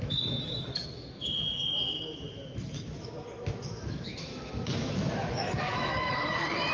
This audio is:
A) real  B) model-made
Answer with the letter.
B